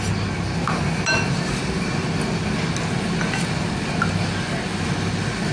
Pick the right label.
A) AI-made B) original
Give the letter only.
B